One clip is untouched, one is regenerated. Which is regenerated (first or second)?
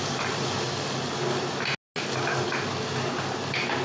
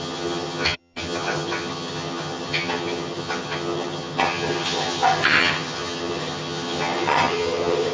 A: second